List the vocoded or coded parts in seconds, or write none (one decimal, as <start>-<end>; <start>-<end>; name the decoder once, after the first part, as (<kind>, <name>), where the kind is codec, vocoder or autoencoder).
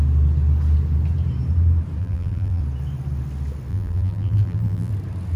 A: 2.0-2.6 (vocoder, BigVGAN v2); 3.7-4.9